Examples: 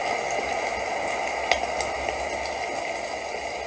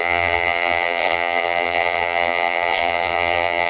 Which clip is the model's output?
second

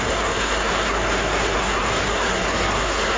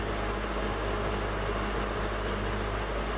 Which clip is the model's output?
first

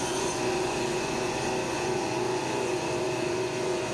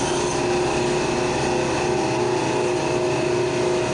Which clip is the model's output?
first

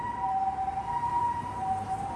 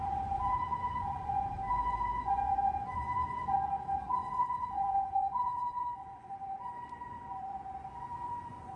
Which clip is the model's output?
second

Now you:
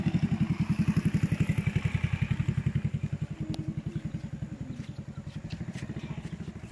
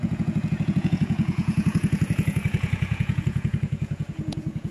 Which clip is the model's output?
second